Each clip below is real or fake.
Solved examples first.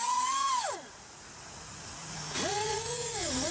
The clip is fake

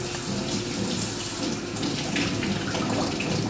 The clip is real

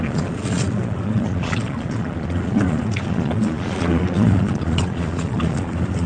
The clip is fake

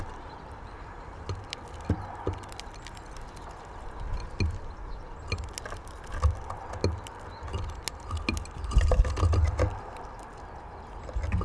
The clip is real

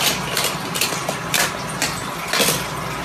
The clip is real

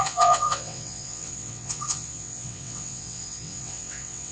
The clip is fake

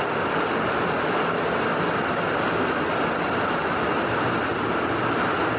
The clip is real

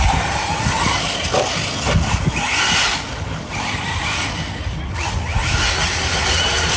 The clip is real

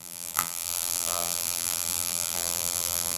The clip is fake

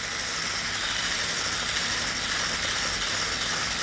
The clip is real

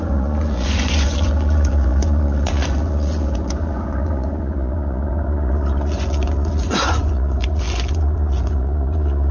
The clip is fake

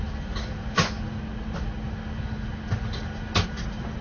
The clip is real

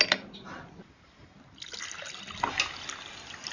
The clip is real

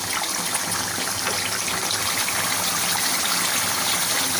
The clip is real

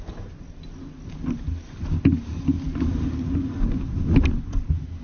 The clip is real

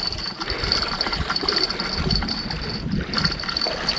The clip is real